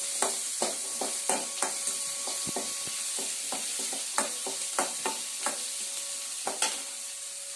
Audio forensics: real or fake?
real